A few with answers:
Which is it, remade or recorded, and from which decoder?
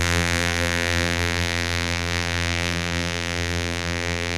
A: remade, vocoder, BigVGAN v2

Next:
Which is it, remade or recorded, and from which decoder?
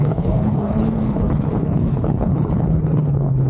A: remade, codec, HILCodec